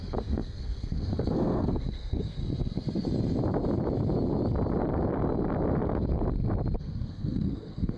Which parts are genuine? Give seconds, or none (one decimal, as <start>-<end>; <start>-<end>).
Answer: 2.4-6.8